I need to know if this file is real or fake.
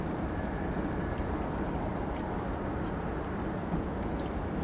real